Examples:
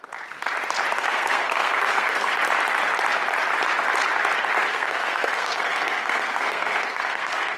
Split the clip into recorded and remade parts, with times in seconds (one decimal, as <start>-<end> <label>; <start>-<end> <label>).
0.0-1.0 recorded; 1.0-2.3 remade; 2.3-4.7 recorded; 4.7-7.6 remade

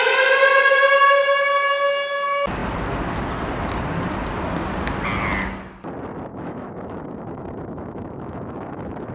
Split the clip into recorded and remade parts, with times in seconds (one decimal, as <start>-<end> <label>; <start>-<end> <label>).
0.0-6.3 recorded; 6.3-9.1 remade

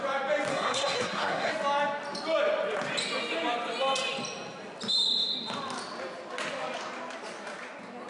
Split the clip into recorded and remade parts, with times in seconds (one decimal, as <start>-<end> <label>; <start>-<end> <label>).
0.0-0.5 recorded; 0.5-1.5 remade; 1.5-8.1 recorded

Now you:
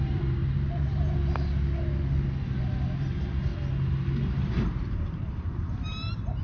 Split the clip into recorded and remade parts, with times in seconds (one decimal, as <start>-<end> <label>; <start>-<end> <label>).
0.0-0.4 remade; 0.4-3.0 recorded; 3.0-3.5 remade; 3.5-4.3 recorded; 4.3-6.4 remade

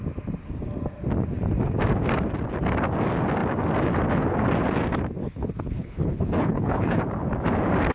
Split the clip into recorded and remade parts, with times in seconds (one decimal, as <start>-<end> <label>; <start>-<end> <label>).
0.0-5.2 recorded; 5.2-7.0 remade; 7.0-7.9 recorded

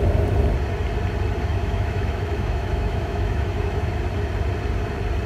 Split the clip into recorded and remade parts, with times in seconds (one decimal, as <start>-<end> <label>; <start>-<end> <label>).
0.0-1.5 recorded; 1.5-3.9 remade; 3.9-5.3 recorded

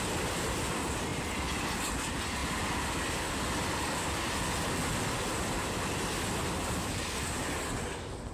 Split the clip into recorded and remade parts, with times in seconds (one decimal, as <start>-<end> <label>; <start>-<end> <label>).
0.0-8.3 recorded